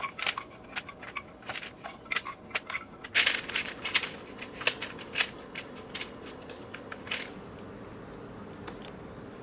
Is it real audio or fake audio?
real